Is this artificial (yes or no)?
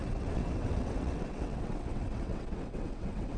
yes